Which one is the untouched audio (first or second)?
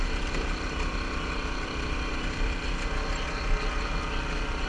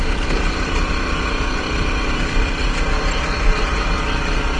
first